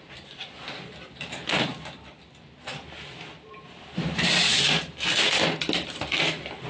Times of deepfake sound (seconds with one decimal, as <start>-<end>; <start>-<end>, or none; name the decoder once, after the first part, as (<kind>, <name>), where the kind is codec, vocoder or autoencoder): none